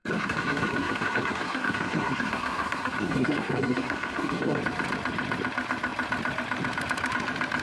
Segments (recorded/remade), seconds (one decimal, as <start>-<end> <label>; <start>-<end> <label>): 0.0-4.6 remade; 4.6-7.6 recorded